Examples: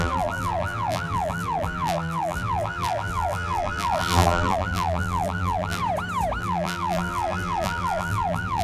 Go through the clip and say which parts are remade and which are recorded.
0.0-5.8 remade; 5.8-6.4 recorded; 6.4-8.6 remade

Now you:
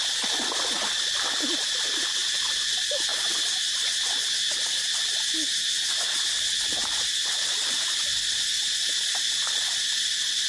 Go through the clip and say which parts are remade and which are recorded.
0.0-10.5 recorded

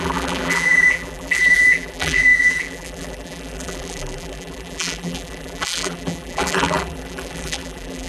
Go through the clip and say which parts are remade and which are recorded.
0.0-8.1 remade

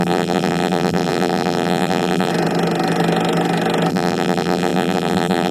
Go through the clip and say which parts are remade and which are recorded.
0.0-2.3 remade; 2.3-3.9 recorded; 3.9-5.5 remade

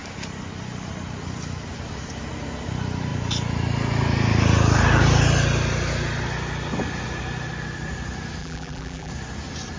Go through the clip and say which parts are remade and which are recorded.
0.0-8.4 recorded; 8.4-9.1 remade; 9.1-9.8 recorded

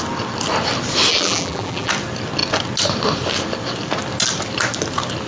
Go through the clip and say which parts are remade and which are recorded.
0.0-1.1 recorded; 1.1-1.9 remade; 1.9-5.3 recorded

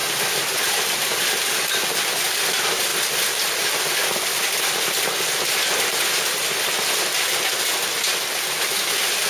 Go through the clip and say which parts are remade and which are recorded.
0.0-9.3 recorded